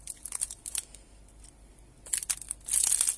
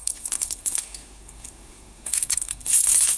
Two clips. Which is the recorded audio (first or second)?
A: first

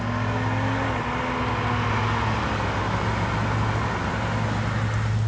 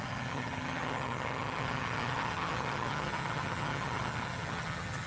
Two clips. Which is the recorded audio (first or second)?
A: first